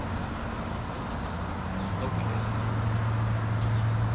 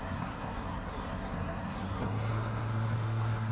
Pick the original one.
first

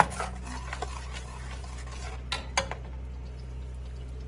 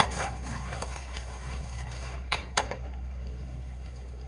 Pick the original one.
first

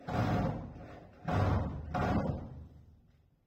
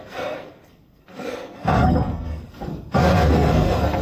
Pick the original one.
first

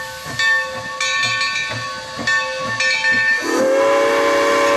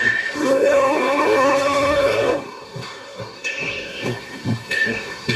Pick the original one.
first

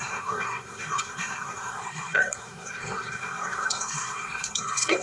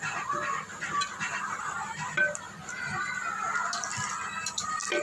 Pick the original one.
second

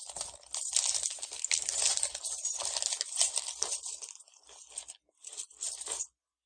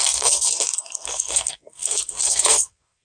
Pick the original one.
first